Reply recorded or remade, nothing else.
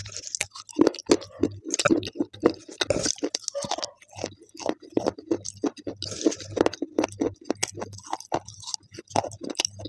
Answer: recorded